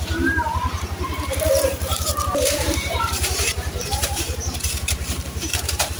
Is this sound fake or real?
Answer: fake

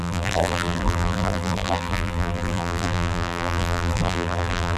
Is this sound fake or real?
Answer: fake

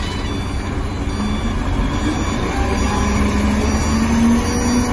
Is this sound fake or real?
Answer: real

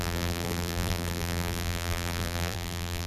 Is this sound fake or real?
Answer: fake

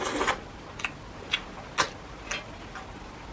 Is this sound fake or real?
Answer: real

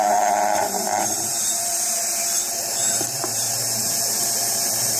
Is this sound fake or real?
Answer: fake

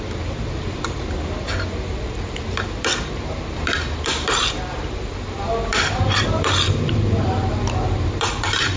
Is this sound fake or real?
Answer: fake